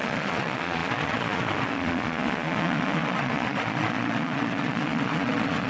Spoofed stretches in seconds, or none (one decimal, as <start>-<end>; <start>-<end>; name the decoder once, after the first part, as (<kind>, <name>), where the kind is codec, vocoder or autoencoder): 0.0-5.7 (vocoder, Vocos)